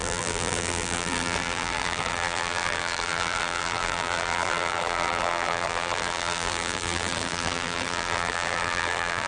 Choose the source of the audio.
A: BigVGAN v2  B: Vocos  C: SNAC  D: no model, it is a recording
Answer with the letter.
A